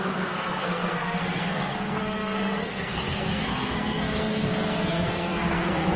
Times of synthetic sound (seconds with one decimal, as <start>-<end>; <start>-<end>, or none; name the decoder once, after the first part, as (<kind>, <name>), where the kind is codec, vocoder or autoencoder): 0.0-6.0 (codec, SNAC)